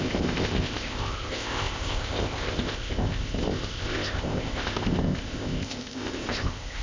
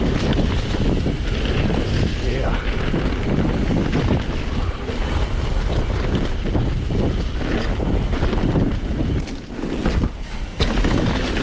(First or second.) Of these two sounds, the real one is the second